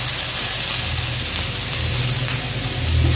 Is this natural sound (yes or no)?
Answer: yes